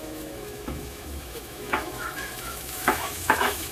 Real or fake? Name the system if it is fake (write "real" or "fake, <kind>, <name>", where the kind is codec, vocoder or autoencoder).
fake, autoencoder, DAC-VAE